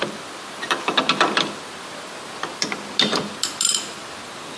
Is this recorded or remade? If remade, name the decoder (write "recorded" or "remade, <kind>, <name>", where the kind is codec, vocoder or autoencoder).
recorded